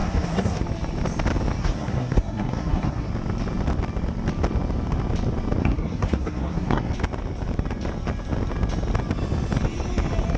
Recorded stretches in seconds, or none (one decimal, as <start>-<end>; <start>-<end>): 0.6-1.6; 3.1-5.6; 6.9-10.4